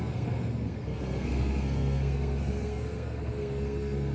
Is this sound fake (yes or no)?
yes